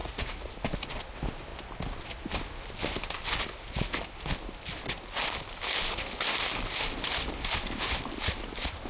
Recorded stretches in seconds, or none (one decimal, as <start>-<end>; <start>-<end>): 0.6-8.9